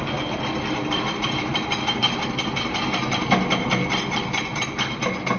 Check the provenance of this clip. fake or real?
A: real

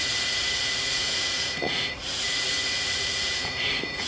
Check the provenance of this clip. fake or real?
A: fake